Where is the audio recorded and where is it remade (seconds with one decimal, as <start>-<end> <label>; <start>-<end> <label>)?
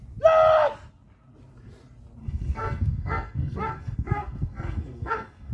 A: 0.0-2.2 recorded; 2.2-5.5 remade